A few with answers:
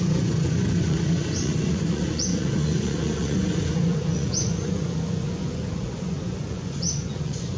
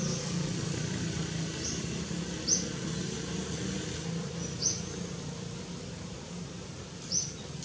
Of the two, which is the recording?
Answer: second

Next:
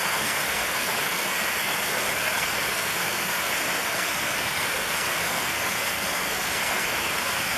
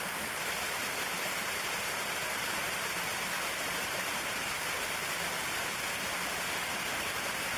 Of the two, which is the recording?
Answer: second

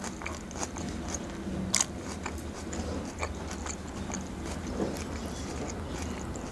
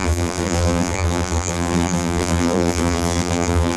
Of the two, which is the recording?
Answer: first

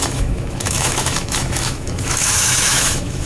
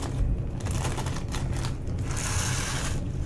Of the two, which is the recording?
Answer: second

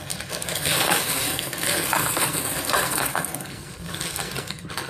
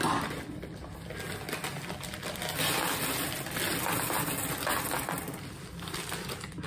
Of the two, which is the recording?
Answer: second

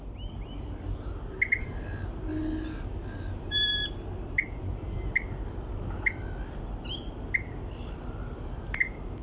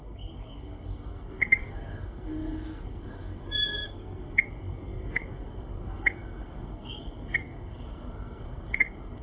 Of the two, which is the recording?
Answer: first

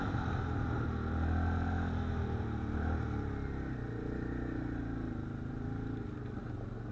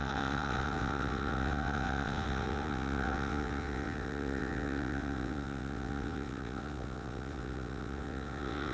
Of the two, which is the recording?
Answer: first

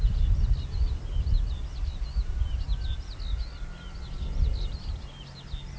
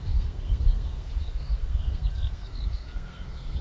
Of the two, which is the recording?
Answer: first